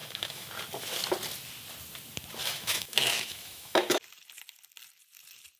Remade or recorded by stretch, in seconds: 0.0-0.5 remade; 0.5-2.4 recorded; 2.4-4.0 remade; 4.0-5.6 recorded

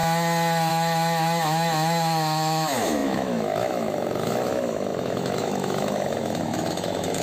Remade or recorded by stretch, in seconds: 0.0-0.7 recorded; 0.7-7.2 remade

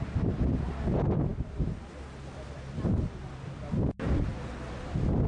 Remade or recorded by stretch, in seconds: 0.0-5.3 recorded

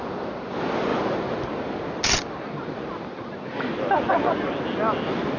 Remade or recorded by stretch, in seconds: 0.0-5.4 recorded